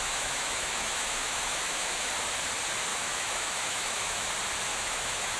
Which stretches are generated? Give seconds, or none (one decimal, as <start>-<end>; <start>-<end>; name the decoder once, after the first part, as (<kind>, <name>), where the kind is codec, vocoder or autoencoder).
0.0-2.1 (autoencoder, DAC-VAE); 2.9-4.3; 4.7-5.4